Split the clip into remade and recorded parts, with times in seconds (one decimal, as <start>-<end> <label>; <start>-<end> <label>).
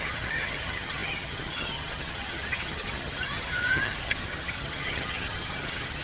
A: 0.0-6.0 remade